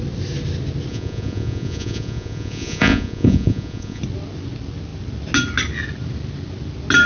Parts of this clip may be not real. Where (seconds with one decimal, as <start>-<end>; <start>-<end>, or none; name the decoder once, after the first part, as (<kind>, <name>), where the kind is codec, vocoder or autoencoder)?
0.9-4.0 (vocoder, Vocos)